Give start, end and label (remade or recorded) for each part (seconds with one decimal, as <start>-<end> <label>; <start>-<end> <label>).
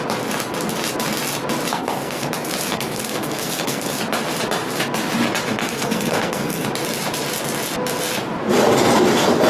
0.0-1.7 recorded; 1.7-2.3 remade; 2.3-2.7 recorded; 2.7-4.0 remade; 4.0-5.6 recorded; 5.6-6.7 remade; 6.7-9.5 recorded